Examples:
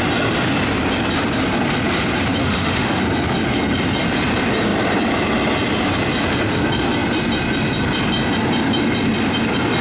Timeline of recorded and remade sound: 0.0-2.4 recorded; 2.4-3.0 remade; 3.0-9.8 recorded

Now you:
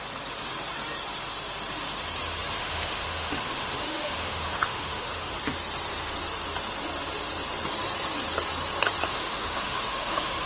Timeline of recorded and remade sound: 0.0-2.6 recorded; 2.6-5.4 remade; 5.4-9.1 recorded; 9.1-10.5 remade

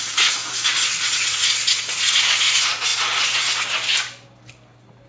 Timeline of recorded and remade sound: 0.0-0.4 remade; 0.4-1.0 recorded; 1.0-2.9 remade; 2.9-5.1 recorded

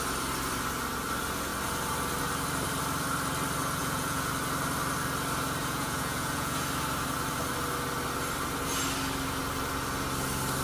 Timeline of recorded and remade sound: 0.0-3.8 recorded; 3.8-4.3 remade; 4.3-5.6 recorded; 5.6-6.6 remade; 6.6-10.6 recorded

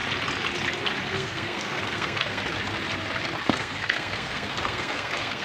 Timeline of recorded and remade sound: 0.0-1.0 recorded; 1.0-2.4 remade; 2.4-3.4 recorded; 3.4-5.4 remade

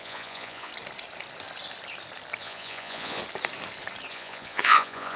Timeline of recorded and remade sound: 0.0-0.7 remade; 0.7-2.4 recorded; 2.4-3.2 remade; 3.2-4.1 recorded; 4.1-5.2 remade

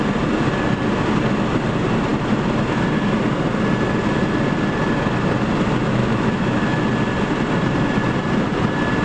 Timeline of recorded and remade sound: 0.0-6.0 recorded; 6.0-6.8 remade; 6.8-9.0 recorded

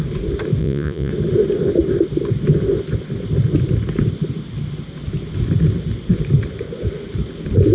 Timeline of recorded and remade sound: 0.0-0.6 recorded; 0.6-1.1 remade; 1.1-7.7 recorded